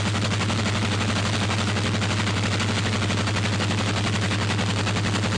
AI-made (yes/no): no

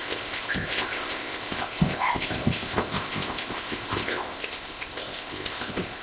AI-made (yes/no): yes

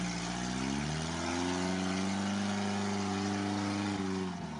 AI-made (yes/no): no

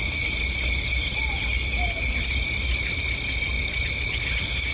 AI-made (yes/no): no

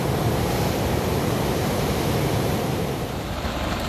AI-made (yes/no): yes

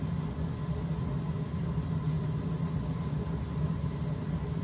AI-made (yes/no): no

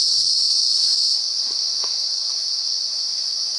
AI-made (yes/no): yes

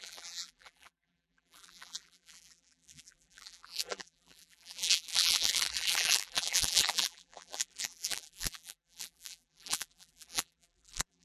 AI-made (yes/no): yes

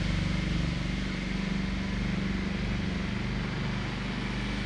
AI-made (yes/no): no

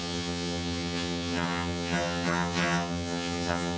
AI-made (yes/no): yes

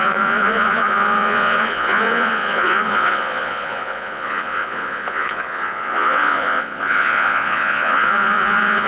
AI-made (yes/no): yes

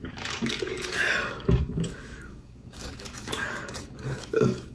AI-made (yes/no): yes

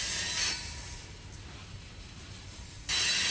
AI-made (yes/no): no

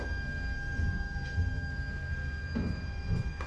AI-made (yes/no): yes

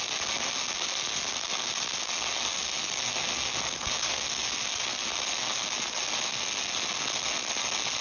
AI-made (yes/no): no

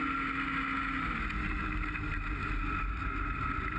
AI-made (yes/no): no